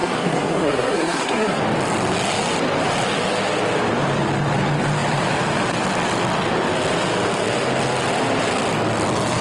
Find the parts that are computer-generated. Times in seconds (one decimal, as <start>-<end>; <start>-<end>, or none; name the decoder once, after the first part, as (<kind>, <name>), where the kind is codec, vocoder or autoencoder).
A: 0.0-1.6 (codec, SNAC)